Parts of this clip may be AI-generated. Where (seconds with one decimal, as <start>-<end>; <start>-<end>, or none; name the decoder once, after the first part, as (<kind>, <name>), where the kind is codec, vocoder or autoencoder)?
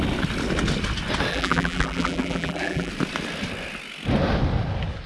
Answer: 1.3-2.9 (vocoder, BigVGAN v2)